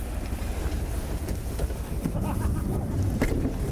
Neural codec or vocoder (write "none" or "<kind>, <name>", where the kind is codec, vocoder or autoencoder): vocoder, BigVGAN v2